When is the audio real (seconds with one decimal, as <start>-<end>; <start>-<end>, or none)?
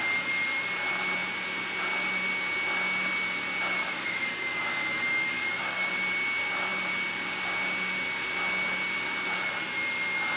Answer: 0.0-3.8; 5.9-10.4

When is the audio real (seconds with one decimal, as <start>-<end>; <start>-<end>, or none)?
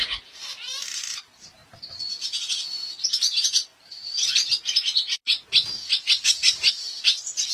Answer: 0.4-1.2; 1.6-3.0; 3.7-6.7